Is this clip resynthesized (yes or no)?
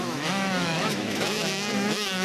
yes